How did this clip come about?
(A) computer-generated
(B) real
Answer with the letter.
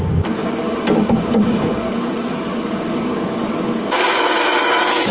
A